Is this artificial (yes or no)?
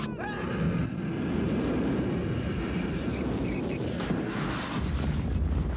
no